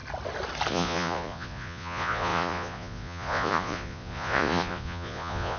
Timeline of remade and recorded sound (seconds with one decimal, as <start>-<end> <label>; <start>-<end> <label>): 0.0-0.7 recorded; 0.7-5.6 remade